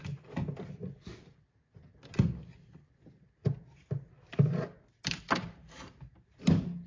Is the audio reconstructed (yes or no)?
no